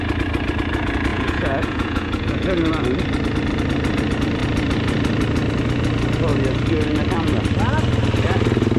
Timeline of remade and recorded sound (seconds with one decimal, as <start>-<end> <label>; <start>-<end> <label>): 0.0-1.1 recorded; 1.1-2.7 remade; 2.7-8.8 recorded